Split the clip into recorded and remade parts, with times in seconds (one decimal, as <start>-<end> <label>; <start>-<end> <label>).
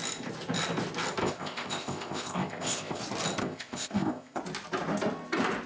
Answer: 0.0-1.2 recorded; 1.2-3.0 remade; 3.0-3.4 recorded; 3.4-4.4 remade; 4.4-5.7 recorded